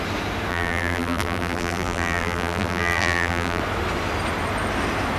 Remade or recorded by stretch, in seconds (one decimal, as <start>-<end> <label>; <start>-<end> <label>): 0.0-0.5 recorded; 0.5-3.6 remade; 3.6-5.2 recorded